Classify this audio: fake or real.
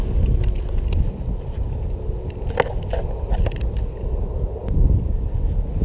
real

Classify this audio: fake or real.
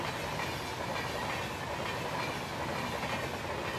real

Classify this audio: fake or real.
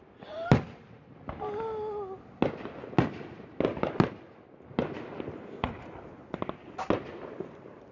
real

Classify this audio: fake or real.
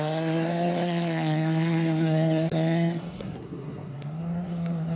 fake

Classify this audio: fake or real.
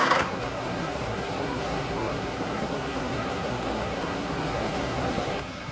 fake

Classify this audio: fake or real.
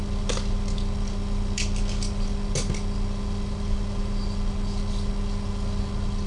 real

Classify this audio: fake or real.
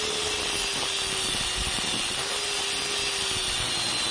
real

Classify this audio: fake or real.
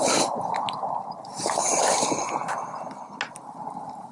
real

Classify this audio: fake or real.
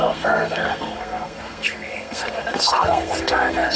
fake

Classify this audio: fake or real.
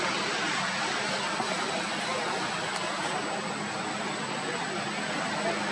real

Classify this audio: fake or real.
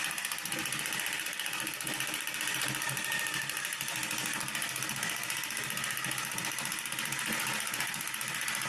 real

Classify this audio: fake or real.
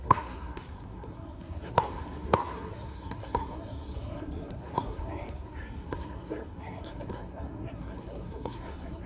fake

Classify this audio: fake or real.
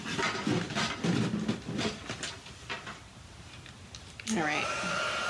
real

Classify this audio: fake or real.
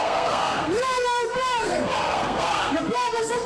fake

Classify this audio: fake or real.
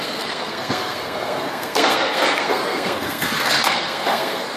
fake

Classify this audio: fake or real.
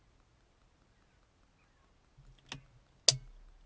real